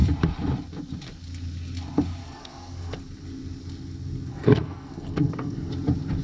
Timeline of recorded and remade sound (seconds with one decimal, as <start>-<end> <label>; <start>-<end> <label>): 0.0-2.2 recorded; 2.2-3.0 remade; 3.0-4.3 recorded; 4.3-5.7 remade; 5.7-6.2 recorded